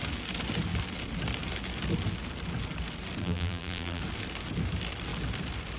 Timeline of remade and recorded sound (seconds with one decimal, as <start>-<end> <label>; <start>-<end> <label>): 0.0-3.2 recorded; 3.2-4.0 remade; 4.0-5.8 recorded